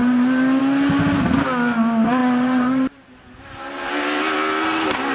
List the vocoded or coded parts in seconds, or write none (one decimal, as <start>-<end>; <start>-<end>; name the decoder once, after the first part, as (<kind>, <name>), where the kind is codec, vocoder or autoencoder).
none